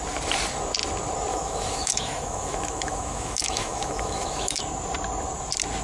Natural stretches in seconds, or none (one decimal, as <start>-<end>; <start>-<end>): 0.0-1.3; 4.6-5.8